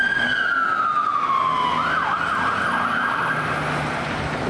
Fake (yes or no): no